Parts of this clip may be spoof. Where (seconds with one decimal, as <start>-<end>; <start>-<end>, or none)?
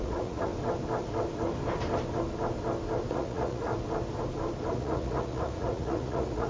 0.0-0.5; 3.1-3.7; 4.7-6.5